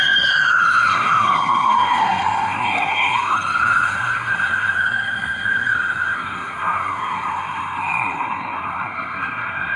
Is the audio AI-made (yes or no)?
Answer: yes